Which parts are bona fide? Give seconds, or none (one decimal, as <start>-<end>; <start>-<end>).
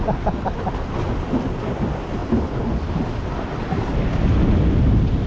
0.0-5.3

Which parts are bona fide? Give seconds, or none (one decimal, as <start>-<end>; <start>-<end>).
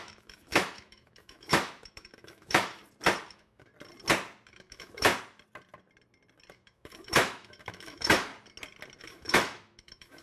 2.8-3.3; 3.7-4.5; 5.1-6.5; 8.3-9.0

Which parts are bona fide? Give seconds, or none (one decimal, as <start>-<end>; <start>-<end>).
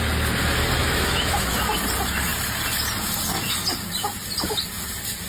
0.0-0.8; 1.6-5.3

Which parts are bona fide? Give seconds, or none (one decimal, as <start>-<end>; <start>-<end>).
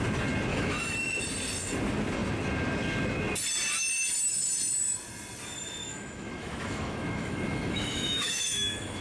0.0-0.5; 1.2-5.8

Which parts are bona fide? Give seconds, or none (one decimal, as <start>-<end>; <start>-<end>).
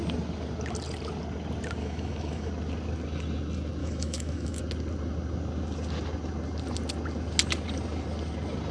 0.0-1.8; 2.5-3.8; 4.6-8.7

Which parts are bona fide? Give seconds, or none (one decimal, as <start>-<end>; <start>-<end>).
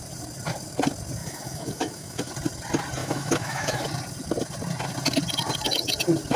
0.0-1.2; 2.3-3.0; 3.8-6.4